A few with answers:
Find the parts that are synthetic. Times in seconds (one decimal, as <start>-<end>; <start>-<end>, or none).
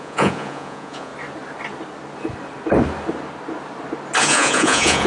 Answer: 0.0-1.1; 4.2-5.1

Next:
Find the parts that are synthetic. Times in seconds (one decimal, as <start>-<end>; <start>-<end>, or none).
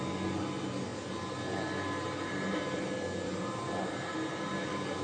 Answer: none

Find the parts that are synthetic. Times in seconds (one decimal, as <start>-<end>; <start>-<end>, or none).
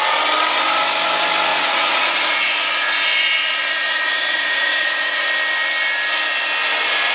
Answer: 1.5-5.3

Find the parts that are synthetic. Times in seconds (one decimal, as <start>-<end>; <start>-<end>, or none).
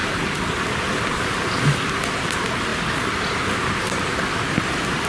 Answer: none